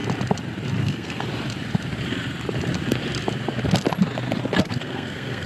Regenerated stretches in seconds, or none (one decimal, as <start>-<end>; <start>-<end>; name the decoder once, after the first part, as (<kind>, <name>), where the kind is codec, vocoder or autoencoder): 0.8-1.3 (codec, SNAC); 4.6-5.5